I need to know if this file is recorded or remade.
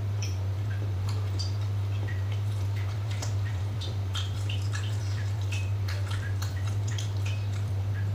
remade